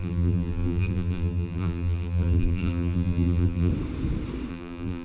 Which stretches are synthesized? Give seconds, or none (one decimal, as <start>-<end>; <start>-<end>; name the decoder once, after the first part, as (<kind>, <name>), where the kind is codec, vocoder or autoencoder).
0.0-3.7 (vocoder, BigVGAN v2); 4.5-5.0